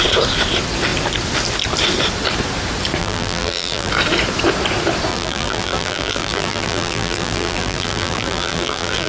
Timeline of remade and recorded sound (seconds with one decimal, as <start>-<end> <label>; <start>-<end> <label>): 0.0-3.0 recorded; 3.0-3.9 remade; 3.9-5.1 recorded; 5.1-9.1 remade